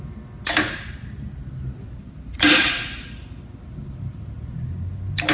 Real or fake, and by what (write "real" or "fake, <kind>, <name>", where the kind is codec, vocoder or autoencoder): real